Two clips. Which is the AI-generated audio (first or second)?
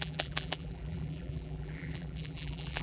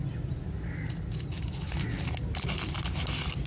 first